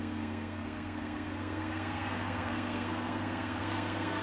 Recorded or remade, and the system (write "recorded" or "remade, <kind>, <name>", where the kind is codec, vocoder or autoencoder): remade, codec, SNAC